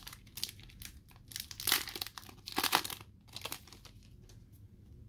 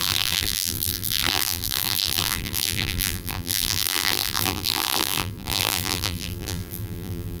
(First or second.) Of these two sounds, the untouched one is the first